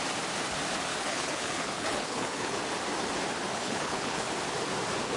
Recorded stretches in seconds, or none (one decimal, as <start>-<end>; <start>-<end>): 0.0-0.9; 2.6-3.5; 4.3-5.2